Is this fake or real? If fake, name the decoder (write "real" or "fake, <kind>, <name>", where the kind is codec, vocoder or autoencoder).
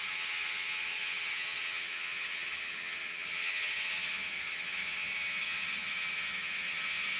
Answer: fake, vocoder, HiFi-GAN